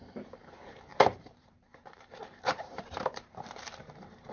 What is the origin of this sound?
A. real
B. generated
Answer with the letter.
B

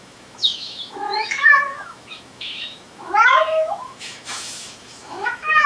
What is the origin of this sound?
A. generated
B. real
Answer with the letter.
A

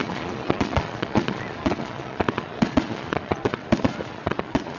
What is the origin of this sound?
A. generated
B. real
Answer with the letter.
A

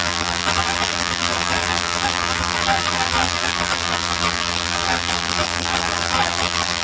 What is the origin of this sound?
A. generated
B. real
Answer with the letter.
A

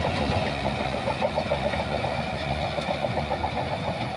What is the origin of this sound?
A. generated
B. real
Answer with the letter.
A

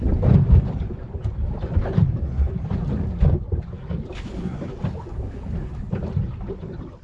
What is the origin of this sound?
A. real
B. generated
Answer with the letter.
B